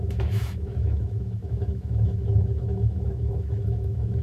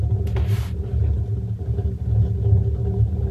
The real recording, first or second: second